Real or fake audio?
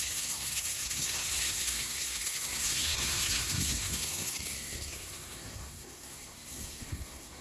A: fake